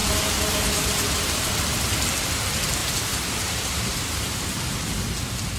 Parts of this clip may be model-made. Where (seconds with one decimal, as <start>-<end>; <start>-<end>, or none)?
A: 0.0-1.5; 2.8-4.6